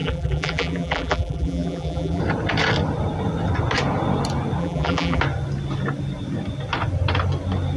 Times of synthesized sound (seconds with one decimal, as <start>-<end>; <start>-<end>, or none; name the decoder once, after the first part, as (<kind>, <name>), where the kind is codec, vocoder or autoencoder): 0.0-2.2 (vocoder, BigVGAN v2); 4.6-5.2